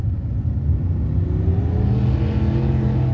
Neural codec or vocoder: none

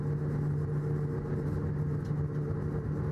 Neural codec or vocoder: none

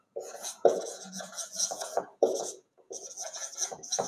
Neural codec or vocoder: vocoder, Vocos